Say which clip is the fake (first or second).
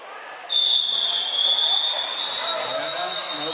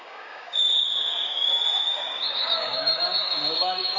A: second